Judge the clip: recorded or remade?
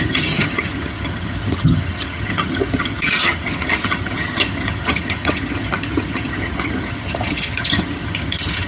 remade